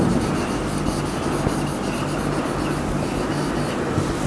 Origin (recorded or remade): recorded